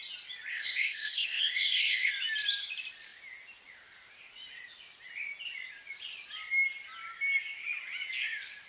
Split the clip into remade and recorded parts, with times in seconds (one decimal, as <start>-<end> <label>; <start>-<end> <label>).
0.0-0.5 recorded; 0.5-2.1 remade; 2.1-8.7 recorded